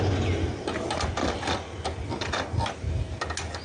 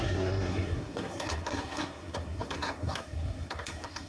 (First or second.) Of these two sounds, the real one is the first